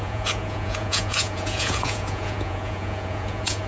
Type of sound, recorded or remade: remade